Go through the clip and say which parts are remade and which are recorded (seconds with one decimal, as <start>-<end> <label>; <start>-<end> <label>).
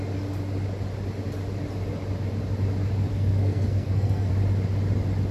0.0-3.1 recorded; 3.1-4.3 remade; 4.3-5.3 recorded